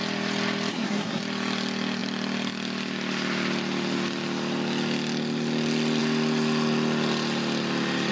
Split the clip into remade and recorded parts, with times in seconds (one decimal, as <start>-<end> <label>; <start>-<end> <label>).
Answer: 0.0-0.7 recorded; 0.7-1.2 remade; 1.2-8.1 recorded

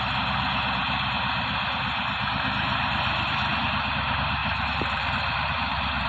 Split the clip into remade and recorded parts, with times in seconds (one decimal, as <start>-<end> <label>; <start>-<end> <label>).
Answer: 0.0-4.4 recorded; 4.4-6.1 remade

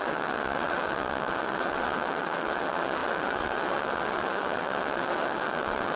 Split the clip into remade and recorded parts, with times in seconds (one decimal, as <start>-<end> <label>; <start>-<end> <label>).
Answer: 0.0-6.0 remade

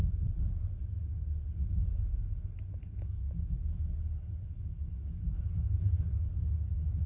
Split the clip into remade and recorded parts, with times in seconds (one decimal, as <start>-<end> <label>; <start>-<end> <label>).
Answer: 0.0-0.6 remade; 0.6-7.1 recorded

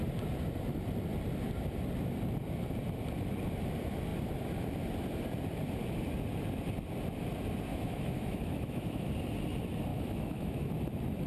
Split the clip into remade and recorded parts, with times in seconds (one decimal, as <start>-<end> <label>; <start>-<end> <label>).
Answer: 0.0-7.7 recorded; 7.7-9.1 remade; 9.1-9.9 recorded; 9.9-10.7 remade; 10.7-11.3 recorded